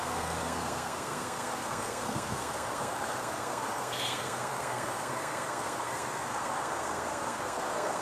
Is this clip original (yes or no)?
no